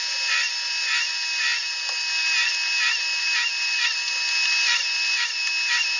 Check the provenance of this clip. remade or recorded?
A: recorded